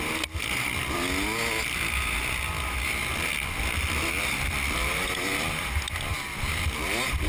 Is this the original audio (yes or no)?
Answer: yes